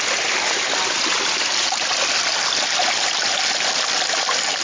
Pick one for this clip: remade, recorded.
recorded